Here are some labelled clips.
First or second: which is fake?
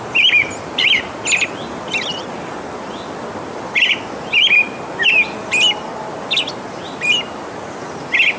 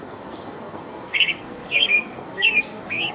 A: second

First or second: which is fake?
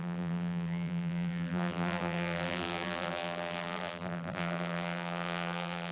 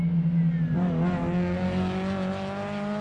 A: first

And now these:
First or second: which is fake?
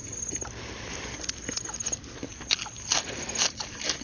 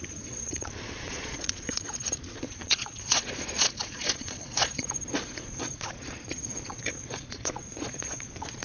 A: second